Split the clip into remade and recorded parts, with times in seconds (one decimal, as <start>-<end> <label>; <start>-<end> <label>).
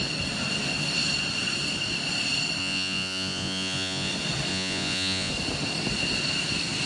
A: 0.0-2.6 recorded; 2.6-4.1 remade; 4.1-4.5 recorded; 4.5-5.3 remade; 5.3-6.9 recorded